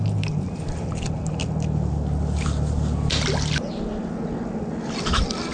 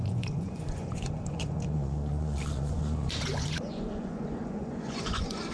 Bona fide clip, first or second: first